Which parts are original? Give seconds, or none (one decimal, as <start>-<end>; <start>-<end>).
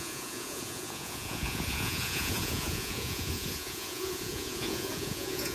none